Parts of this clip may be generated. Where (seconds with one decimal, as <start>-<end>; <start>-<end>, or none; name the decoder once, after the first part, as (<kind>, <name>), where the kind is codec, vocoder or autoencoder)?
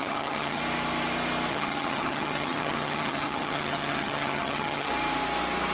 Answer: 0.0-0.6 (vocoder, HiFi-GAN); 1.5-4.9